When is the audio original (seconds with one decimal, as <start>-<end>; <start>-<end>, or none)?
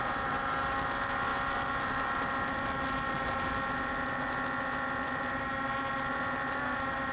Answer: 0.0-7.1